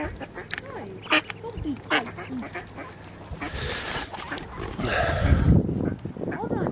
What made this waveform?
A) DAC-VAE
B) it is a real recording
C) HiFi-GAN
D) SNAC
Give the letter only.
B